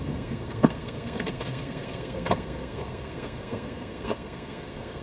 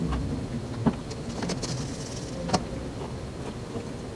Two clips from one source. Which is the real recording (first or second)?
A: second